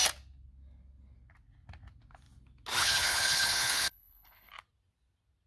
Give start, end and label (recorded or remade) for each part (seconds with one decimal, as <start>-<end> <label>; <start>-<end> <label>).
0.0-2.8 recorded; 2.8-4.5 remade; 4.5-5.5 recorded